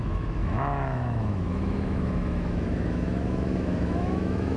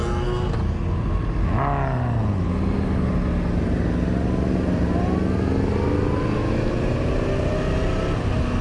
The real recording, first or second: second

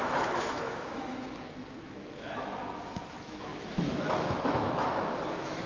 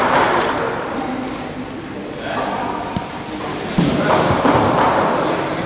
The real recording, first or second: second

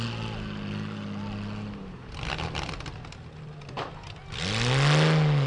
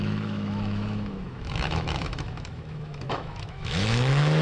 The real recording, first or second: first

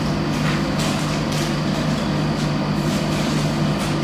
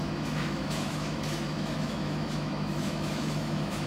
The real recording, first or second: first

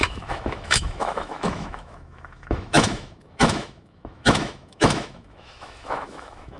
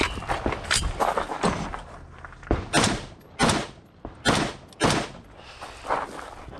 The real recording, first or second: second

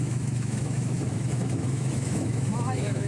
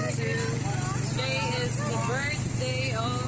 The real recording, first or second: second